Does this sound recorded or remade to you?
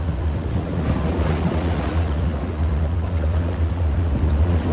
remade